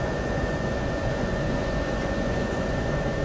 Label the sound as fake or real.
fake